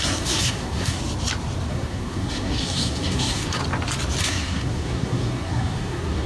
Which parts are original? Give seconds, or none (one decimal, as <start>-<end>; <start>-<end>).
1.0-1.7; 3.6-4.2